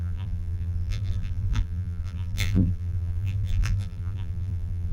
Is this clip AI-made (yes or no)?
yes